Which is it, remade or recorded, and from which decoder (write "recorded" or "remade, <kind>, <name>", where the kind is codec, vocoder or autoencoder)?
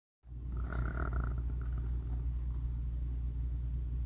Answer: recorded